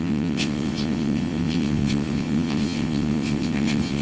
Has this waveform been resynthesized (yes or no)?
yes